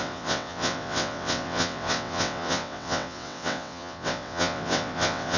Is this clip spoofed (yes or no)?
yes